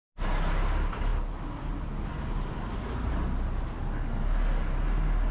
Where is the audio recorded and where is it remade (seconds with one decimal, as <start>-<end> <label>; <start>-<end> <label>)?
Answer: 0.0-5.3 recorded